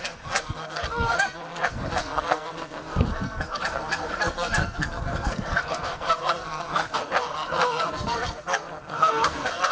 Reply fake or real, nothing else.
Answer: fake